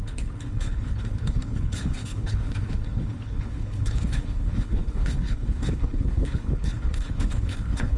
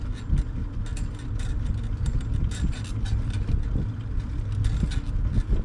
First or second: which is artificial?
first